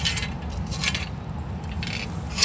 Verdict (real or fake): real